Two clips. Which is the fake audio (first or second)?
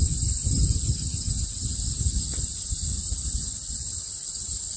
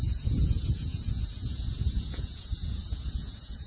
second